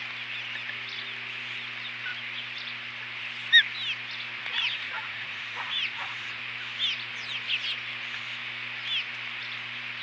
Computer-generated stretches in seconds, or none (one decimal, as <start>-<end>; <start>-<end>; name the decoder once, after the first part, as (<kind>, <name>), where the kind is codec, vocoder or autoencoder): 4.4-6.4 (vocoder, Vocos)